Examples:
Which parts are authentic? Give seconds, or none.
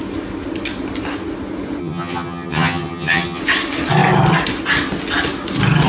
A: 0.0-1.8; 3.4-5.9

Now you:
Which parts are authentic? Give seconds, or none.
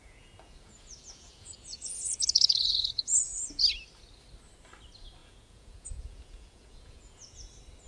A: 3.6-5.2; 7.5-7.9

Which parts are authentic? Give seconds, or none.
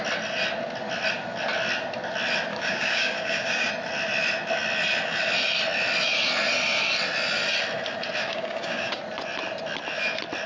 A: 0.0-2.5; 3.7-8.2; 9.0-10.5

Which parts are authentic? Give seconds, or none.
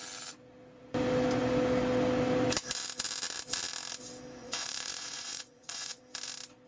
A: 0.0-4.4; 6.0-6.7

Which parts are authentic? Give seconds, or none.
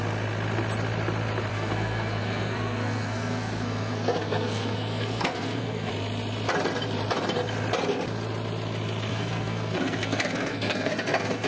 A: 0.0-1.5; 5.9-9.1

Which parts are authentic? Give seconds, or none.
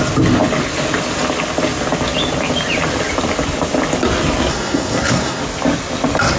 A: 0.0-4.5; 5.4-6.4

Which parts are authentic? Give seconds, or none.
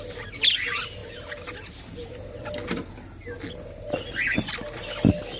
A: 0.0-5.4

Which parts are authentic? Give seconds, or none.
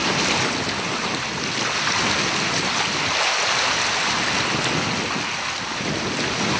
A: 0.0-6.6